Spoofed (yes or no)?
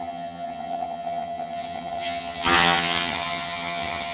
yes